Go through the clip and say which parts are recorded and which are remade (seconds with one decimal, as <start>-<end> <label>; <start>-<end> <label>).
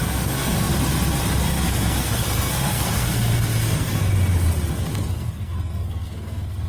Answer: 0.0-0.7 remade; 0.7-1.4 recorded; 1.4-4.1 remade; 4.1-4.7 recorded; 4.7-6.7 remade